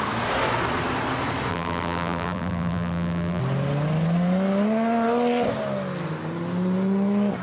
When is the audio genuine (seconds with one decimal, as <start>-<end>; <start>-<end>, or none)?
0.0-1.5; 3.4-7.4